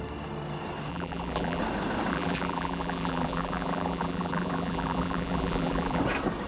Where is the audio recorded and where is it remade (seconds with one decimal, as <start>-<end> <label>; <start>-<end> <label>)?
0.0-0.9 recorded; 0.9-1.6 remade; 1.6-2.1 recorded; 2.1-6.0 remade; 6.0-6.5 recorded